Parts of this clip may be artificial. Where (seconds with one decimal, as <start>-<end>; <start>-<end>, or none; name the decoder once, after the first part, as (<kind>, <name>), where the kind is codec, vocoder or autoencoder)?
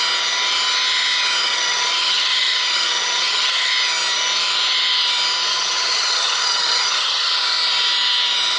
1.4-3.7 (vocoder, HiFi-GAN); 5.5-7.3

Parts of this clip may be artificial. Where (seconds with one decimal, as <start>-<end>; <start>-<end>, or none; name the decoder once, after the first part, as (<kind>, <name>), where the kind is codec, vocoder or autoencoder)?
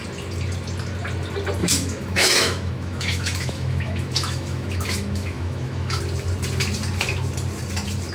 1.6-6.0 (autoencoder, DAC-VAE)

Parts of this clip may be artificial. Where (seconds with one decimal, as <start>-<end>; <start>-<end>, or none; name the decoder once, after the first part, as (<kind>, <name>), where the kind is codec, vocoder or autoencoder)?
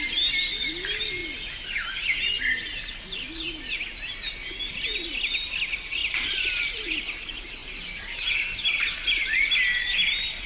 6.0-7.0 (vocoder, BigVGAN v2); 7.6-8.1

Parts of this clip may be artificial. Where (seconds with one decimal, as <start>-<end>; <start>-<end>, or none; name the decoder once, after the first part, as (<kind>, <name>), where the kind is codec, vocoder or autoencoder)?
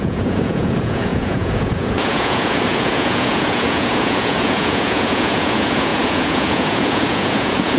0.0-7.8 (vocoder, Vocos)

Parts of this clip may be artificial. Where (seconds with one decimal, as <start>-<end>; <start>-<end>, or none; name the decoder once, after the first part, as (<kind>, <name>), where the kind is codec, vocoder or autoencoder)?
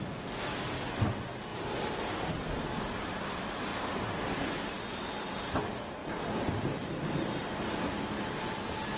1.5-2.3 (vocoder, BigVGAN v2); 3.7-4.6; 6.0-7.0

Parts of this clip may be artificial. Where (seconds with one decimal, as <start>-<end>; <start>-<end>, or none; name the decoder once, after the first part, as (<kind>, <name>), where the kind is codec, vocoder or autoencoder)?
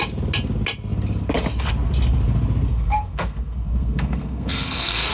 2.7-5.1 (codec, SNAC)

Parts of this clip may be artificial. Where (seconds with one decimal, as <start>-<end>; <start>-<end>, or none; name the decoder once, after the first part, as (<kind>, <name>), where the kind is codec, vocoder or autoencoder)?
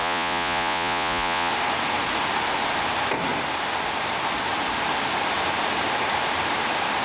0.0-1.5 (vocoder, Vocos)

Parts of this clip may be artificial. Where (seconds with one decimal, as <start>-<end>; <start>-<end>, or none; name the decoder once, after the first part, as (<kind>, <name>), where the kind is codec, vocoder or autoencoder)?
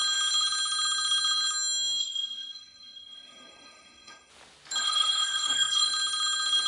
2.0-4.3 (codec, SNAC); 4.8-5.9